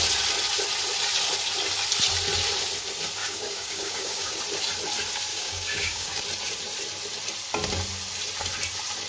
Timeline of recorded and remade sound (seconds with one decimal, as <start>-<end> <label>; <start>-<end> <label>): 0.0-3.2 recorded; 3.2-4.4 remade; 4.4-5.3 recorded; 5.3-6.2 remade; 6.2-9.1 recorded